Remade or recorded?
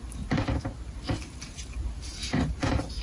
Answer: remade